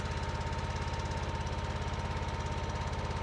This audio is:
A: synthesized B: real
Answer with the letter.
B